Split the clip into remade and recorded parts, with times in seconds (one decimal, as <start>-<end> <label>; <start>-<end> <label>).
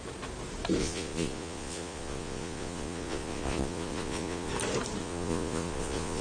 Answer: 0.0-0.8 recorded; 0.8-4.5 remade; 4.5-5.0 recorded; 5.0-6.2 remade